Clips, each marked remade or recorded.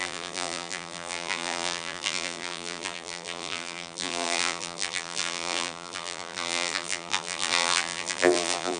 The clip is remade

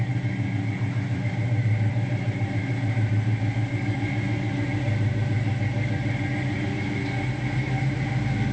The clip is remade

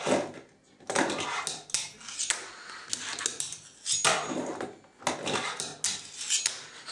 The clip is recorded